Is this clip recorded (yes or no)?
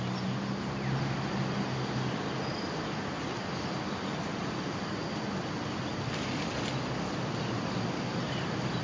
yes